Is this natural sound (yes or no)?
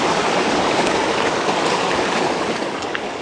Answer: no